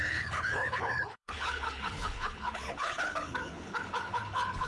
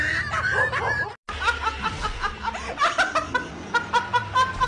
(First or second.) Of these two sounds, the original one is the second